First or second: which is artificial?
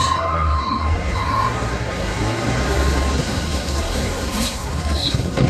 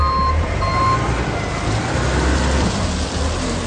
first